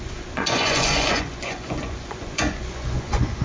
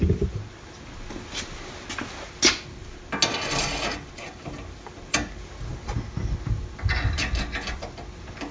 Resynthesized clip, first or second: first